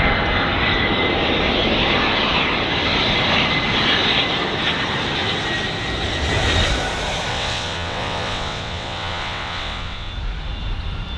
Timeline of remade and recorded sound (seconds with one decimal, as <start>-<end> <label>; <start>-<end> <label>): 0.0-7.3 recorded; 7.3-10.1 remade; 10.1-11.2 recorded